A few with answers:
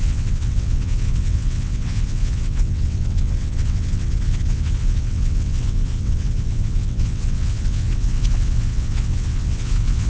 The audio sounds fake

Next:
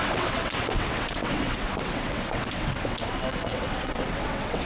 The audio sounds fake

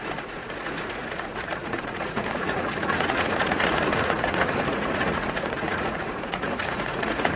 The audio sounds fake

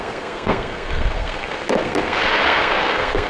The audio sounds fake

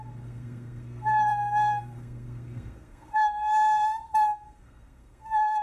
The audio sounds fake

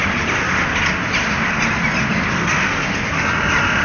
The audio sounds real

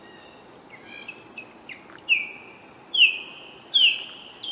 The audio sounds real